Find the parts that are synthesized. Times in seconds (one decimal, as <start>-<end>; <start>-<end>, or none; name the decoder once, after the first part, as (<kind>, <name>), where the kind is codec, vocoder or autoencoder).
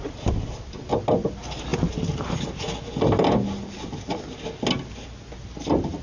none